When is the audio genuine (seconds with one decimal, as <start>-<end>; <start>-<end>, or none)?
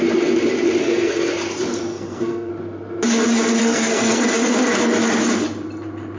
0.0-0.8; 1.3-1.9; 2.5-3.6; 4.2-6.2